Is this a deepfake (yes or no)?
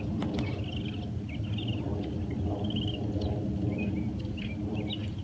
no